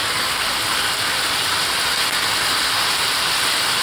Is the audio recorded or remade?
recorded